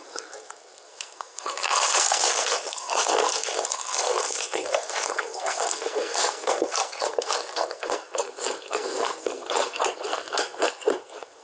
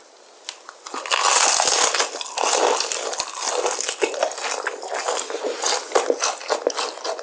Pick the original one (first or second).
second